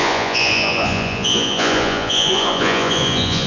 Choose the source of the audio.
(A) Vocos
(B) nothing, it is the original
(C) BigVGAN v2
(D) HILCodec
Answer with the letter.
A